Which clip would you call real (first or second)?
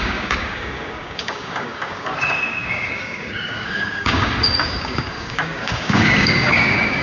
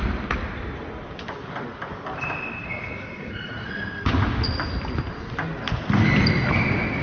second